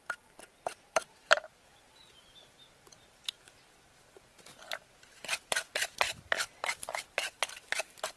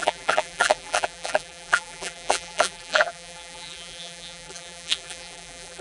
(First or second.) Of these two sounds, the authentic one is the first